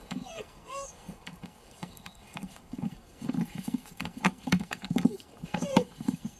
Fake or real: fake